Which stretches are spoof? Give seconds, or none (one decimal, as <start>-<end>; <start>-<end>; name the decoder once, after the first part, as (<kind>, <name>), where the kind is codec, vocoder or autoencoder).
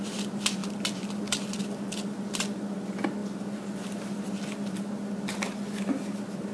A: none